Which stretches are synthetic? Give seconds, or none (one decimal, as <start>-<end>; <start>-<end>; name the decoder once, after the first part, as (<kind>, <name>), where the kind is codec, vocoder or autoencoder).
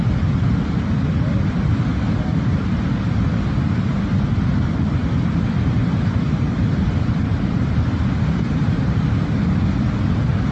1.9-2.5 (vocoder, BigVGAN v2); 5.8-9.1